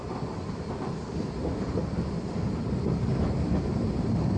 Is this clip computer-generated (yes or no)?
no